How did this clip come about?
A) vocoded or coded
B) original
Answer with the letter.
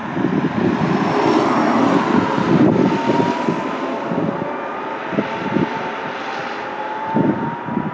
B